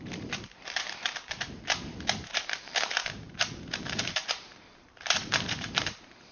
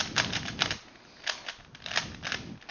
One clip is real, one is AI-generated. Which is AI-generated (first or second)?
first